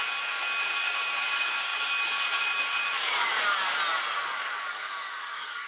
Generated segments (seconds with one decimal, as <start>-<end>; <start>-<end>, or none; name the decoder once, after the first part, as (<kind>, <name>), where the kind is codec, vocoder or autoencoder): 0.0-3.6 (codec, DAC); 4.3-5.7